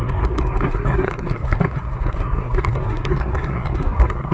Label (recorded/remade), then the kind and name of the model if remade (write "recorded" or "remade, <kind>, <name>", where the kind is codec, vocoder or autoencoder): remade, codec, SNAC